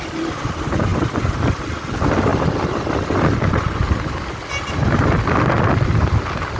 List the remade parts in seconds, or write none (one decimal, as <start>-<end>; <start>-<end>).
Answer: none